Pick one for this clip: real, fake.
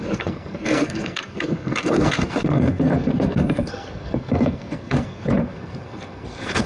fake